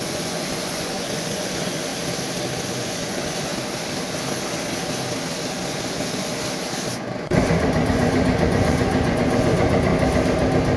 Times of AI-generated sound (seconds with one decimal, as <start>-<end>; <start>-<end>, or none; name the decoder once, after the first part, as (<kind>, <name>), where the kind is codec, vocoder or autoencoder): 0.0-1.9 (vocoder, Vocos); 2.8-3.5; 5.5-6.3; 6.9-9.9